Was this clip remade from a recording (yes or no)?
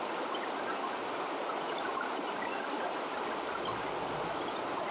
no